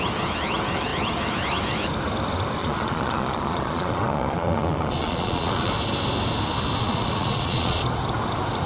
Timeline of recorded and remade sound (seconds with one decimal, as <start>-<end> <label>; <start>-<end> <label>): 0.0-2.6 recorded; 2.6-5.7 remade; 5.7-6.8 recorded; 6.8-7.8 remade; 7.8-8.7 recorded